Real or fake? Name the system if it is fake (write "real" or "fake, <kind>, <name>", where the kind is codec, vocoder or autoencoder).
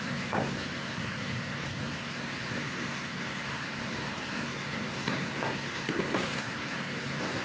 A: fake, codec, SNAC